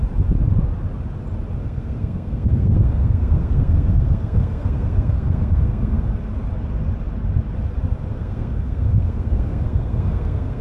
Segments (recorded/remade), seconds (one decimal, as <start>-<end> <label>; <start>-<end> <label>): 0.0-1.6 recorded; 1.6-6.1 remade; 6.1-8.1 recorded; 8.1-10.6 remade